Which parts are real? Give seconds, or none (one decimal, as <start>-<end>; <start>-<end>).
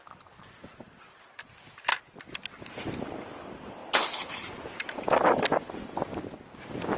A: 0.0-7.0